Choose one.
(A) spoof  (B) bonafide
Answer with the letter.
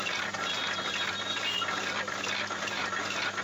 B